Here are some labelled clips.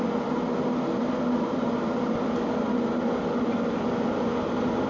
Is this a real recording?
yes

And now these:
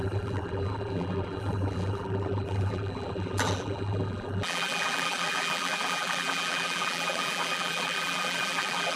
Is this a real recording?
no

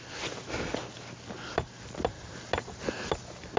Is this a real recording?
yes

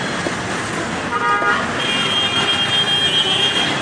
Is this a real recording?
yes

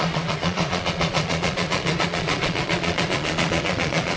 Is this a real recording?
no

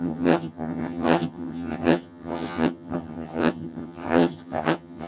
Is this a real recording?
no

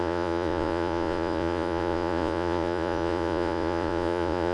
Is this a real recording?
no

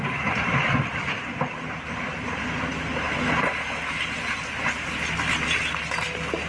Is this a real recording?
yes